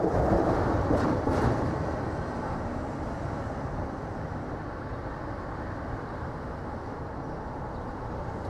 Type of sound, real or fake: fake